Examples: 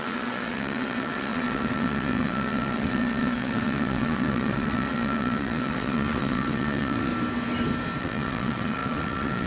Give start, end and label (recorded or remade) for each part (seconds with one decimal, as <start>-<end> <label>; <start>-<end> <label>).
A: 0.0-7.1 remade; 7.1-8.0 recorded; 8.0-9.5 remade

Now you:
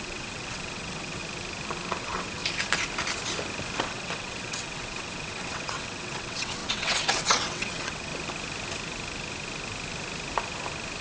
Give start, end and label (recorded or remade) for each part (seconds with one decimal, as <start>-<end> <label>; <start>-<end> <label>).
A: 0.0-1.2 remade; 1.2-2.0 recorded; 2.0-2.4 remade; 2.4-3.8 recorded; 3.8-8.1 remade; 8.1-11.0 recorded

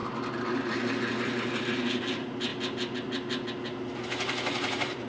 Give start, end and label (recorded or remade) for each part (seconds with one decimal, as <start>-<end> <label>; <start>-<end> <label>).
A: 0.0-5.1 recorded

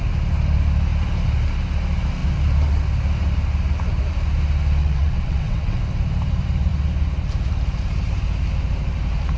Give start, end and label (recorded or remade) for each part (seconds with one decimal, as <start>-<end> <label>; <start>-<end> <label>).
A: 0.0-4.8 recorded; 4.8-5.8 remade; 5.8-9.4 recorded

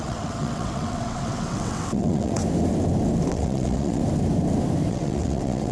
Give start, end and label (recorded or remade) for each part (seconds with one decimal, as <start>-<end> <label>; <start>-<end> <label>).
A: 0.0-2.4 remade; 2.4-3.3 recorded; 3.3-4.0 remade; 4.0-4.9 recorded; 4.9-5.7 remade